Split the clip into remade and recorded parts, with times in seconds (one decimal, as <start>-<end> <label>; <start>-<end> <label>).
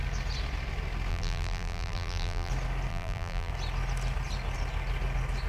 0.0-1.1 recorded; 1.1-2.5 remade; 2.5-2.9 recorded; 2.9-3.5 remade; 3.5-5.5 recorded